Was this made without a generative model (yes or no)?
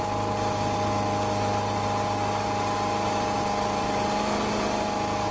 yes